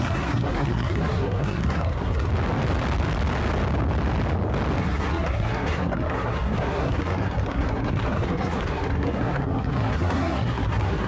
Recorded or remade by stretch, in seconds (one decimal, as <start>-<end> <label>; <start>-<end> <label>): 0.0-2.3 remade; 2.3-4.8 recorded; 4.8-11.1 remade